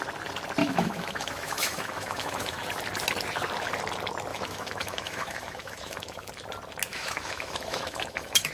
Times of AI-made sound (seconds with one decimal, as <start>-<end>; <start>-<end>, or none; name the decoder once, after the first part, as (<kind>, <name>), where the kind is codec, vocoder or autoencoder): 0.6-2.7 (autoencoder, DAC-VAE); 4.3-6.3; 6.9-8.5